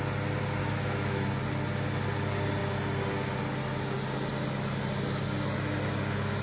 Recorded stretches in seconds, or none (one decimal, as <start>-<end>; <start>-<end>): 0.0-0.6; 1.3-6.4